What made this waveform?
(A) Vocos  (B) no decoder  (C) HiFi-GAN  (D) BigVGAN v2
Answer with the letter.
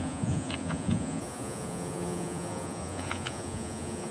A